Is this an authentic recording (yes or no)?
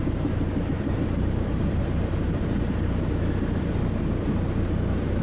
no